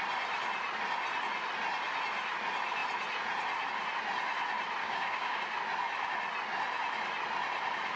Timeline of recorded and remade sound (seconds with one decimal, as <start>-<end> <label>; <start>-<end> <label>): 0.0-4.8 recorded; 4.8-5.4 remade; 5.4-8.0 recorded